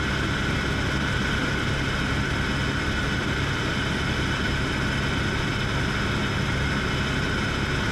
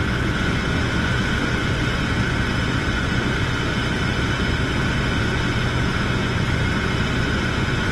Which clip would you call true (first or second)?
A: first